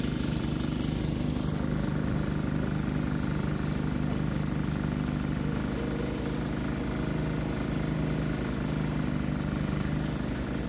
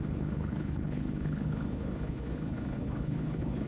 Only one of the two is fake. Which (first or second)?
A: second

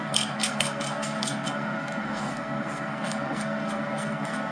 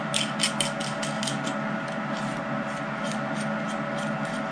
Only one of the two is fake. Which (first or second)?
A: first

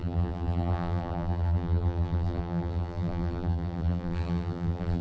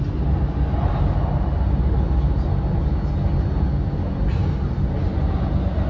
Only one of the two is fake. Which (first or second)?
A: first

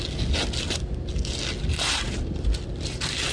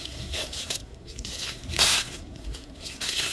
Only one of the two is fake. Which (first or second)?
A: second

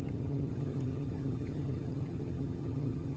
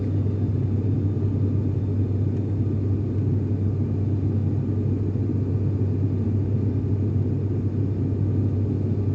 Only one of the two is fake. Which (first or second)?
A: first